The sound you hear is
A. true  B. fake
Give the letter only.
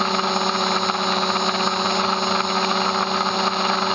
A